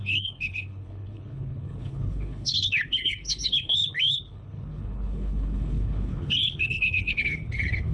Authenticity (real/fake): fake